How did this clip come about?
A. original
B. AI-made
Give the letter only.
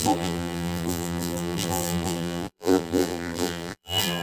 B